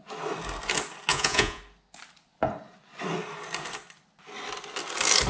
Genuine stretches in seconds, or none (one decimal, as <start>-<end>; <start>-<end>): 0.0-1.1; 1.6-5.3